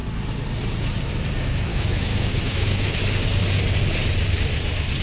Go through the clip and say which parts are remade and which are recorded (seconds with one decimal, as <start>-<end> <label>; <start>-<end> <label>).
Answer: 0.0-1.7 recorded; 1.7-3.0 remade; 3.0-5.0 recorded